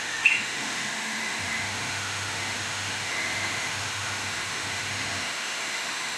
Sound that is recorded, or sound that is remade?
remade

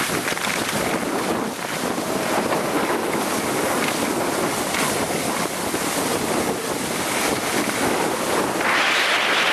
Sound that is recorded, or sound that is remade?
recorded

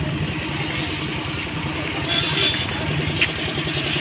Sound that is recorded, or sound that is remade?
recorded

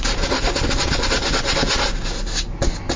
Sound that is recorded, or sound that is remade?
recorded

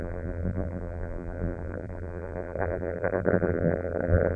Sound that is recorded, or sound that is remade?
remade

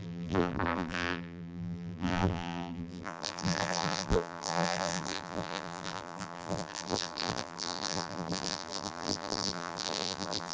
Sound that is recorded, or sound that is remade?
remade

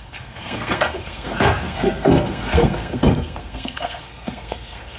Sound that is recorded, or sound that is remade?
remade